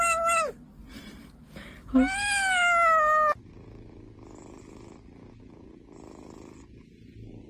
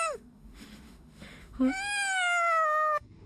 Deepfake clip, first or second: second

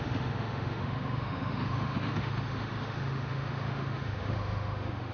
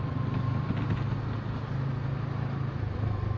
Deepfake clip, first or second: first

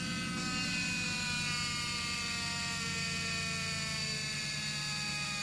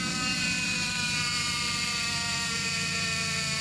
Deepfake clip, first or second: second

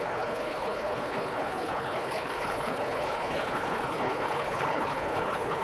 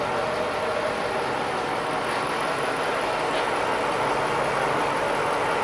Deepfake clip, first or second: first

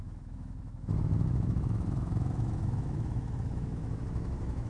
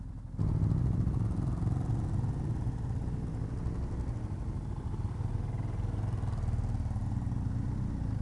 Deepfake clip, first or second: first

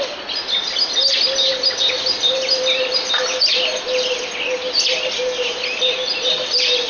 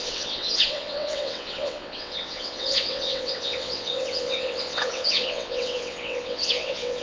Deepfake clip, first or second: second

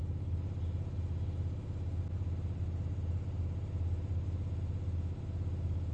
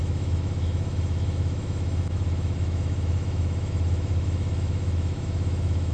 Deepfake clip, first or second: second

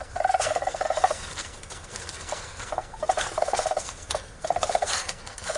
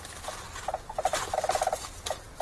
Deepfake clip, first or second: first